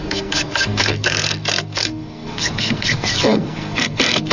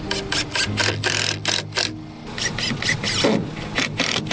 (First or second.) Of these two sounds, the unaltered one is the second